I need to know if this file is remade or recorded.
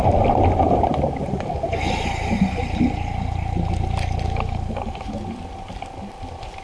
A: recorded